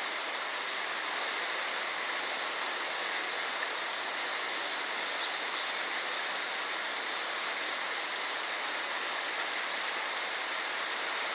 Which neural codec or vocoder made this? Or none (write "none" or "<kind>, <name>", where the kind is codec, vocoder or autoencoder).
none